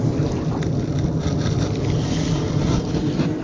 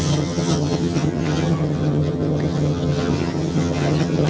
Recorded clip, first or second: first